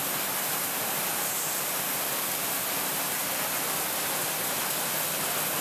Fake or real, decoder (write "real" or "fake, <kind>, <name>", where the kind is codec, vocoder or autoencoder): real